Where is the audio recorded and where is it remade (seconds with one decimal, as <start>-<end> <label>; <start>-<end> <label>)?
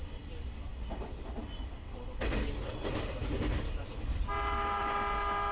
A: 0.0-5.5 recorded